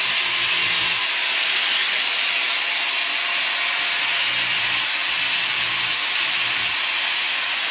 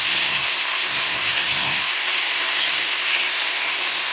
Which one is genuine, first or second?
first